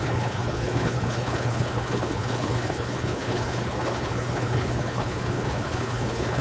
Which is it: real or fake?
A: fake